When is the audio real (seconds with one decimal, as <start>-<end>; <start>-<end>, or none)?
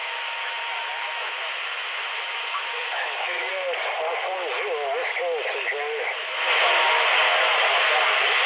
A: 3.5-8.5